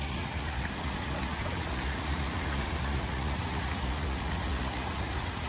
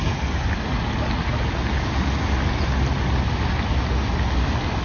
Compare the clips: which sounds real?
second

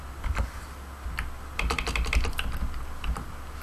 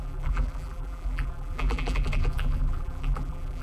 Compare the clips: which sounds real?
first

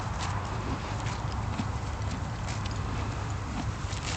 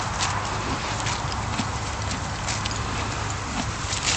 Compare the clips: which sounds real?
second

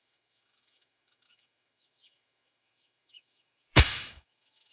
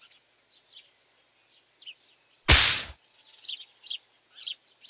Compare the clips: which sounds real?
second